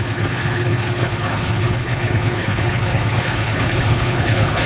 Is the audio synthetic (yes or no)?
yes